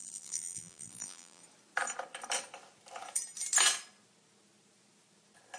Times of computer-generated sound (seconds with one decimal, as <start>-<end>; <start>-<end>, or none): 0.0-1.4